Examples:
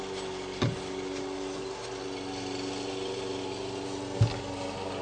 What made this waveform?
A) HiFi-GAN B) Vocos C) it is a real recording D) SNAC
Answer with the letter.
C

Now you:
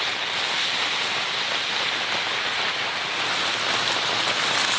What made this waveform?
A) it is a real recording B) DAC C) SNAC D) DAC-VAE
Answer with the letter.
A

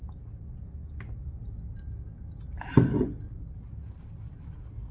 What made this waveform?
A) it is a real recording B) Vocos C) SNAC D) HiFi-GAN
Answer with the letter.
A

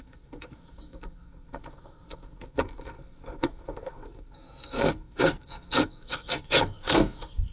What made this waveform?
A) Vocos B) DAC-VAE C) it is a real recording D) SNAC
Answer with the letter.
D